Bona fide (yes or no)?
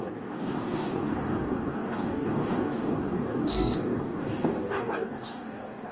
no